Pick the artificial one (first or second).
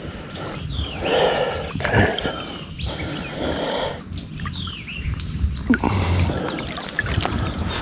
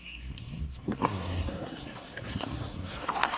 second